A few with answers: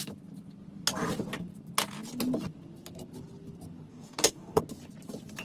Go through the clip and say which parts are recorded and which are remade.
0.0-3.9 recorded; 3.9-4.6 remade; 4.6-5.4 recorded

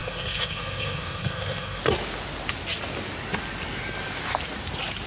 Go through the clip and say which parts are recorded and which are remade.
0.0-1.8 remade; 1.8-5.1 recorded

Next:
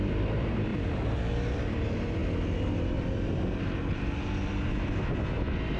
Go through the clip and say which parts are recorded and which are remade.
0.0-2.2 remade; 2.2-5.8 recorded

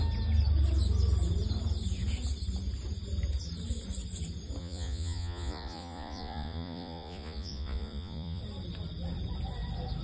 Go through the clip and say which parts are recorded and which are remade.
0.0-4.6 recorded; 4.6-8.4 remade; 8.4-10.0 recorded

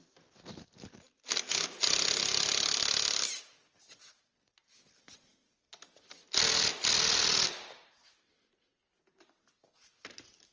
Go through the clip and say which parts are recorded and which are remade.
0.0-10.5 recorded

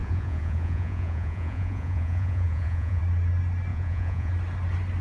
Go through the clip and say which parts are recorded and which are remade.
0.0-3.0 remade; 3.0-3.7 recorded; 3.7-4.3 remade; 4.3-5.0 recorded

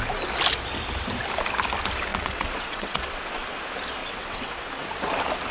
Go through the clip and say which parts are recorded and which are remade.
0.0-2.1 recorded; 2.1-3.2 remade; 3.2-4.0 recorded; 4.0-4.5 remade; 4.5-5.5 recorded